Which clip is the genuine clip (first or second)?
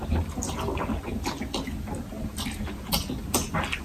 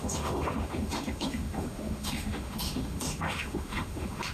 first